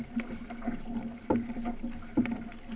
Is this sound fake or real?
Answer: real